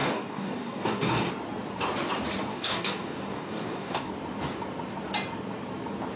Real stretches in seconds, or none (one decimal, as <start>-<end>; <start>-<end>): 1.3-2.5; 4.1-6.2

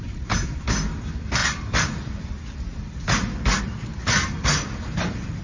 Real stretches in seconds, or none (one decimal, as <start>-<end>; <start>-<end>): 0.0-5.4

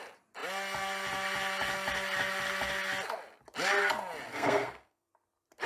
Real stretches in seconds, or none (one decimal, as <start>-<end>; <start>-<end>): 0.0-4.3; 5.1-5.7